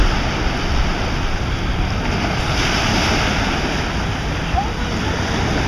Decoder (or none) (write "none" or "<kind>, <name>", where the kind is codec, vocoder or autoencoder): none